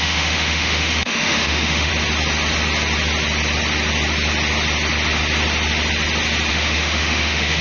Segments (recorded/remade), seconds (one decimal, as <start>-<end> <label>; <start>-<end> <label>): 0.0-1.9 remade; 1.9-6.5 recorded; 6.5-7.6 remade